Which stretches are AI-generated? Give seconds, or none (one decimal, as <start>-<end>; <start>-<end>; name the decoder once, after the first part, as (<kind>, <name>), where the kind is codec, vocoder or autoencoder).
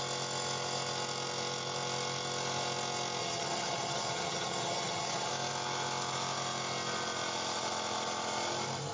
3.2-5.3 (vocoder, HiFi-GAN)